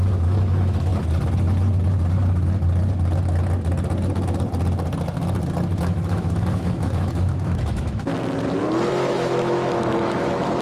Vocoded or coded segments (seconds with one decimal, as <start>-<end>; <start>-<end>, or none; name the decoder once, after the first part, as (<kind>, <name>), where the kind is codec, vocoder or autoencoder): 0.0-0.9 (autoencoder, DAC-VAE); 5.8-8.1; 8.9-10.6